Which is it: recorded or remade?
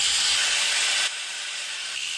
recorded